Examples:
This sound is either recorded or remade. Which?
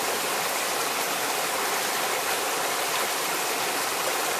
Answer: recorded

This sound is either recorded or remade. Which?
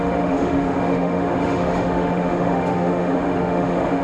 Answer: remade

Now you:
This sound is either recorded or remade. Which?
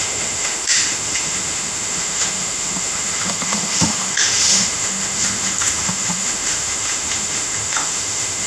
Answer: remade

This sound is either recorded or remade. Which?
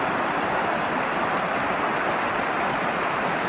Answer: recorded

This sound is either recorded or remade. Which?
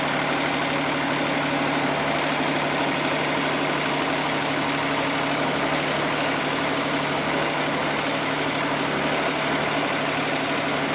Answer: recorded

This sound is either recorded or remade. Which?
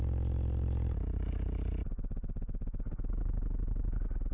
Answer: recorded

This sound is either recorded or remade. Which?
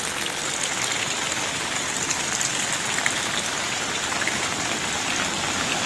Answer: recorded